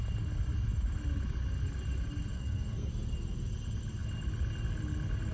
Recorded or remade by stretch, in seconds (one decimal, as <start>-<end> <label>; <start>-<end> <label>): 0.0-2.3 recorded; 2.3-2.9 remade; 2.9-5.3 recorded